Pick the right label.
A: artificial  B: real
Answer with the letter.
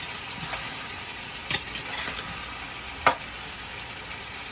B